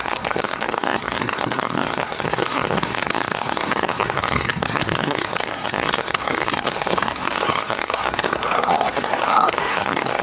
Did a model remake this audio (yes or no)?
yes